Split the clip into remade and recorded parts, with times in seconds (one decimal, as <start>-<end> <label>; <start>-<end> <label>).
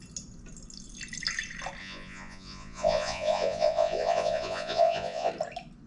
0.0-1.8 recorded; 1.8-5.3 remade; 5.3-5.9 recorded